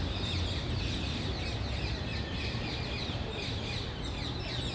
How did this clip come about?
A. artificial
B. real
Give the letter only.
B